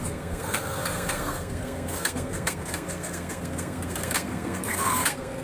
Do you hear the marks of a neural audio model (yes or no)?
yes